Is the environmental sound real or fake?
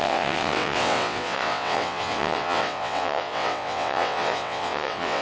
fake